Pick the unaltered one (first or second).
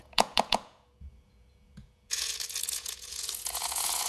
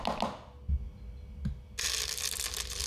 second